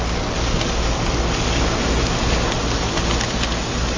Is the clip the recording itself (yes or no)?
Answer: yes